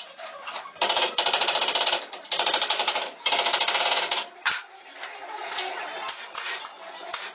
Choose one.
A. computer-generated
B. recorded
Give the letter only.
A